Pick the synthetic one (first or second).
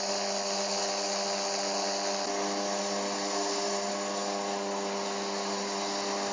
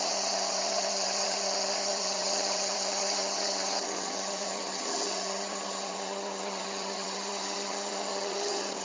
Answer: second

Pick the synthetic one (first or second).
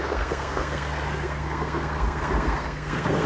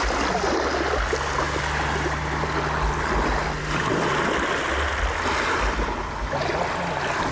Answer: first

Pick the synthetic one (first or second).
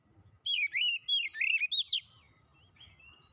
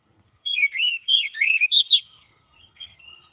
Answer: second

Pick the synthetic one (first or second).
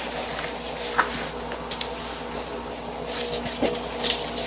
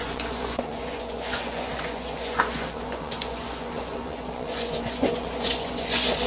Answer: second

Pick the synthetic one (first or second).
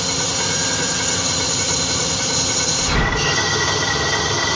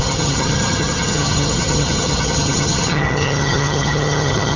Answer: second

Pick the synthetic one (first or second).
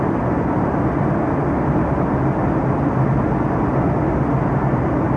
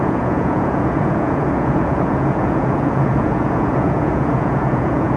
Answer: second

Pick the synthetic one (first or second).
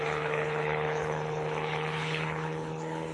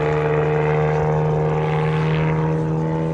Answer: first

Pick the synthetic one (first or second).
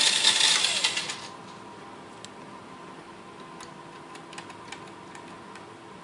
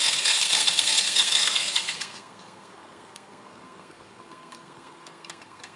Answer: second